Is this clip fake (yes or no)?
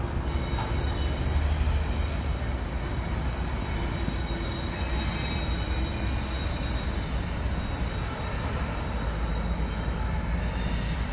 no